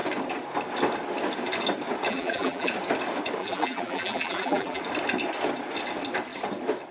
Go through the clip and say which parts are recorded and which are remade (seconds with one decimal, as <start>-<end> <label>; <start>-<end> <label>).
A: 0.0-2.1 recorded; 2.1-2.7 remade; 2.7-3.4 recorded; 3.4-4.8 remade; 4.8-6.9 recorded